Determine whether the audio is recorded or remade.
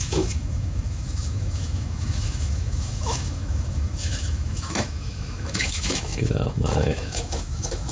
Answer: remade